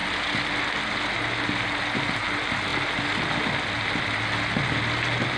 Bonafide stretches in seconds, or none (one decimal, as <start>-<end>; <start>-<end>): 0.0-5.4